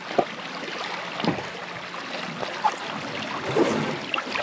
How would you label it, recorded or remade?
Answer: recorded